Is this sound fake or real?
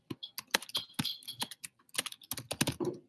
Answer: real